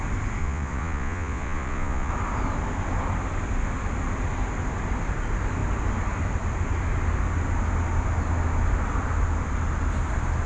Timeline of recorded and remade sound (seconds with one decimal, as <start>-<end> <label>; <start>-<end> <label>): 0.0-0.4 recorded; 0.4-2.1 remade; 2.1-10.5 recorded